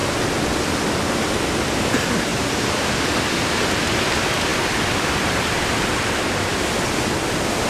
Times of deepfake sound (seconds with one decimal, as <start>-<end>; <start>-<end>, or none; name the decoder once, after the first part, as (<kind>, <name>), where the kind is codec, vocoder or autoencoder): 0.6-5.9 (vocoder, BigVGAN v2)